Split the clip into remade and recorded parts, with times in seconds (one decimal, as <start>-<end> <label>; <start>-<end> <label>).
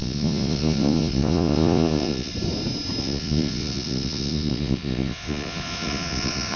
0.0-2.3 remade; 2.3-3.0 recorded; 3.0-6.6 remade